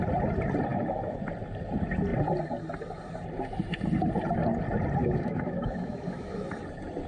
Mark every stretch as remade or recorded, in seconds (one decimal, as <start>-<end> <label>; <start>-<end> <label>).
0.0-0.7 recorded; 0.7-1.2 remade; 1.2-5.0 recorded; 5.0-6.5 remade; 6.5-7.1 recorded